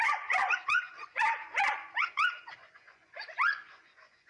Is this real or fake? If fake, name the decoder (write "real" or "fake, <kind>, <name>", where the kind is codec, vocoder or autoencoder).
fake, vocoder, Vocos